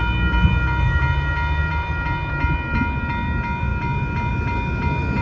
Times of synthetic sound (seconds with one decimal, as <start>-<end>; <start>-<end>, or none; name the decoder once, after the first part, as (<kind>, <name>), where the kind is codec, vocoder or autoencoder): none